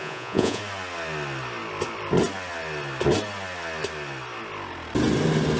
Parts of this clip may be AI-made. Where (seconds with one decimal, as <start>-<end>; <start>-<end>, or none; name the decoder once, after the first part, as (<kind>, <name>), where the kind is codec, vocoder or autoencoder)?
0.0-0.6 (vocoder, Vocos)